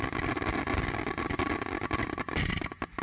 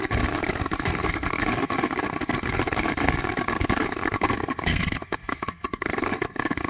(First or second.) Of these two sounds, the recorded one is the first